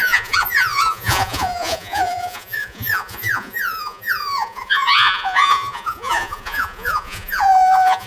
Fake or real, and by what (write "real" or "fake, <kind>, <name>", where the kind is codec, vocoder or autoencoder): fake, vocoder, Vocos